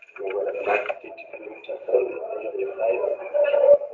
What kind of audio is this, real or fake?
real